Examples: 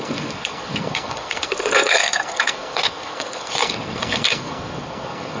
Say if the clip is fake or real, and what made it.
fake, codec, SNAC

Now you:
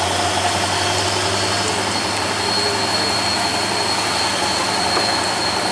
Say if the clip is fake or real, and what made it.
real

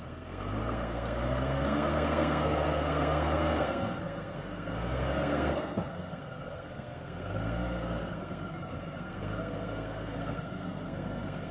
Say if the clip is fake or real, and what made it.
fake, codec, SNAC